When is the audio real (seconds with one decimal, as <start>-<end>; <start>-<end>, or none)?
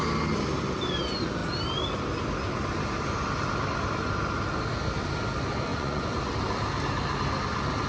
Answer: 0.0-5.7; 6.2-7.9